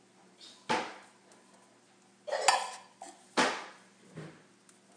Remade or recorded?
recorded